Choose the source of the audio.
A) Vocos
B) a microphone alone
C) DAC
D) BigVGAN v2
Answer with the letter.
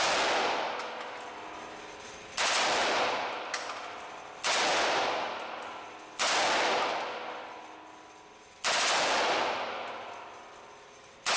B